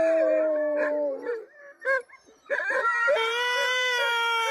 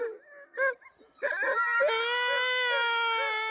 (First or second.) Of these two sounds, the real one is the second